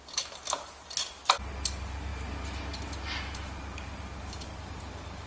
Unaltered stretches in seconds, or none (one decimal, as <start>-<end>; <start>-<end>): 0.0-5.3